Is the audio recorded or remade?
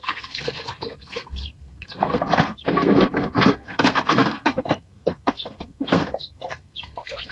remade